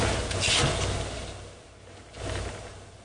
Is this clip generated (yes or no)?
no